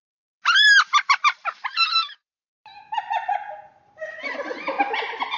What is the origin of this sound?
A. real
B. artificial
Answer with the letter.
A